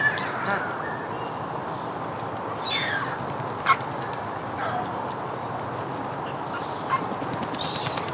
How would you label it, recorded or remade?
recorded